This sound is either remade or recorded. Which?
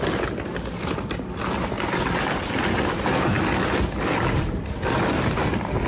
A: recorded